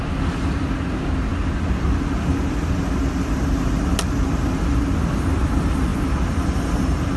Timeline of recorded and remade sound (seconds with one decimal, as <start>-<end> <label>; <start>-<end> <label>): 0.0-7.2 recorded